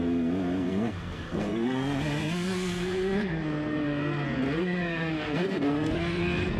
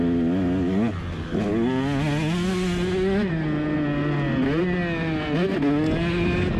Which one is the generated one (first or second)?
first